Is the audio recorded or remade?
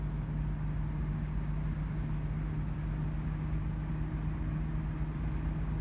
recorded